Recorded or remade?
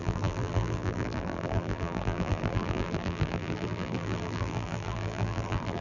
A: remade